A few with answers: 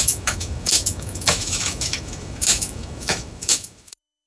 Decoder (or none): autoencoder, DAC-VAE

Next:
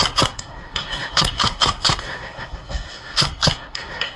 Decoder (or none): codec, SNAC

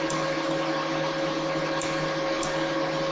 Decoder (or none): none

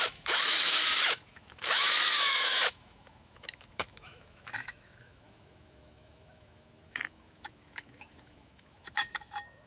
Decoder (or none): autoencoder, DAC-VAE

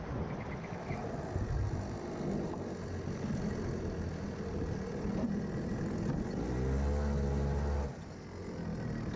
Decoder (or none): none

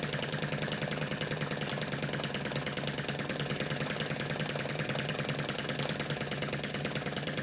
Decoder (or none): none